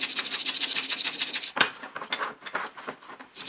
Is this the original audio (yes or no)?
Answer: yes